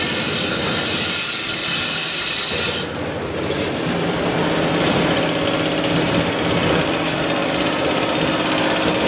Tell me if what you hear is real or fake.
real